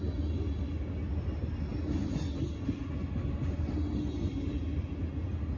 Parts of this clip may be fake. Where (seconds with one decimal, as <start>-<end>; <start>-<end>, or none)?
none